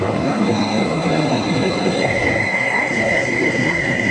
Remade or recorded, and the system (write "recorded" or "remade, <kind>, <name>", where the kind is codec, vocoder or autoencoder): remade, codec, SNAC